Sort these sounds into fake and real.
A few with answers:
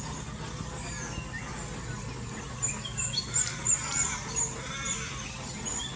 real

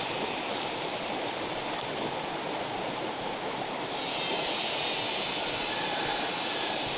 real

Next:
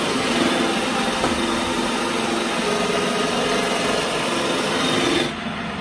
real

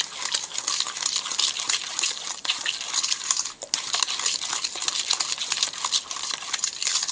real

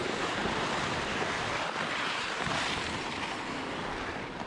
real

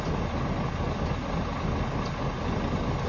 real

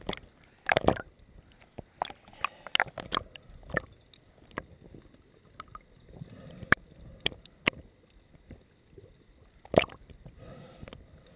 real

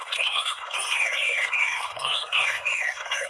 fake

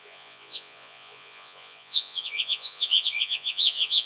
fake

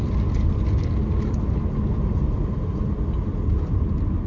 real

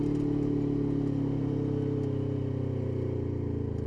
real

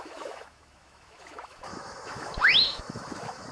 fake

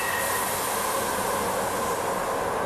real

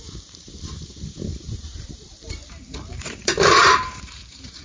fake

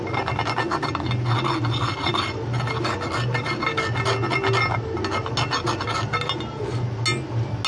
real